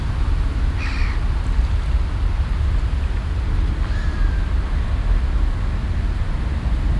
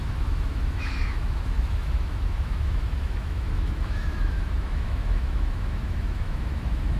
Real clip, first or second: first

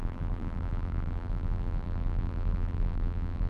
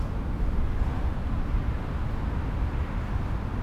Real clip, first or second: second